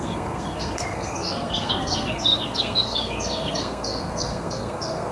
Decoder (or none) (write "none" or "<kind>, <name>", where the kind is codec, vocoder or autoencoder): codec, SNAC